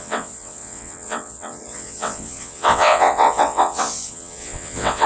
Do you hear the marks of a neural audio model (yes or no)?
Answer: yes